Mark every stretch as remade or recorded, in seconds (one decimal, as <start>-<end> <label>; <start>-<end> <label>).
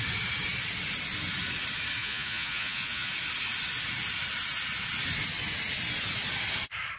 0.0-2.0 recorded; 2.0-3.1 remade; 3.1-7.0 recorded